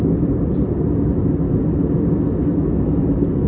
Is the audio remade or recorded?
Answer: recorded